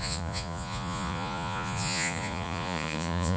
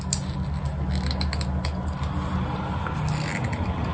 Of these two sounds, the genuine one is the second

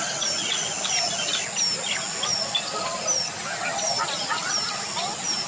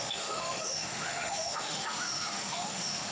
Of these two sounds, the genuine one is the first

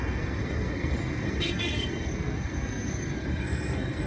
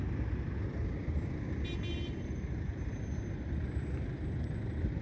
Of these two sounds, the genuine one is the second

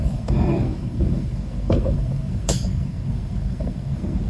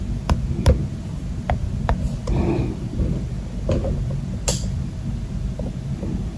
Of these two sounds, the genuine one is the second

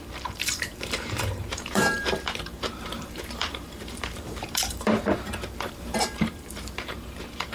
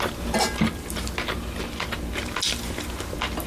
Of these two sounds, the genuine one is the second